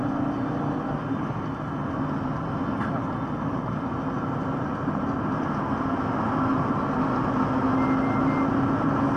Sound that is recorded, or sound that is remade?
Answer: recorded